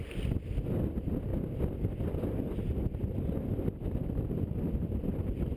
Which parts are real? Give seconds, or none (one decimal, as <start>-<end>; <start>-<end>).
0.0-5.6